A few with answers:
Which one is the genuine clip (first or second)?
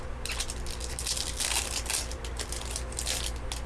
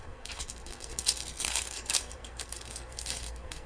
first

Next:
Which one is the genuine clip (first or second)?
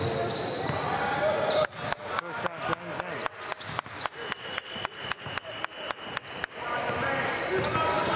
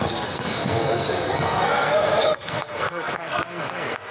first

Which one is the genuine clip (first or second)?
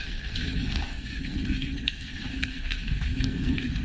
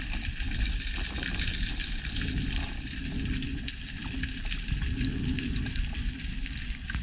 second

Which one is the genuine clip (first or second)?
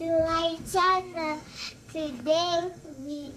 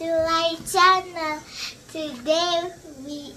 second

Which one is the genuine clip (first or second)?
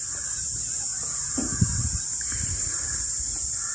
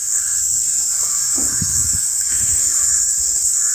first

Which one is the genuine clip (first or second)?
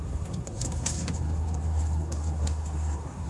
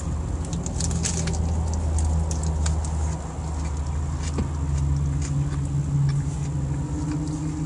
second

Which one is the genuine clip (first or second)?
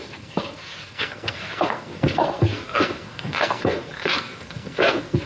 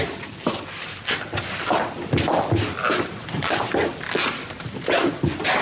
second